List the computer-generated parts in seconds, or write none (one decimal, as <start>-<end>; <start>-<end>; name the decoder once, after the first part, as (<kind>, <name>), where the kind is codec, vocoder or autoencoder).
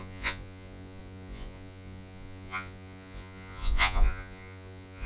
0.0-5.1 (vocoder, Vocos)